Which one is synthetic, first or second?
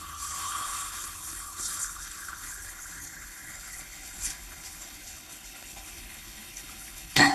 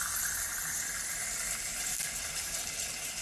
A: first